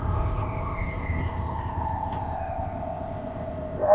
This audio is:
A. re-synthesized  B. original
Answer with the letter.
A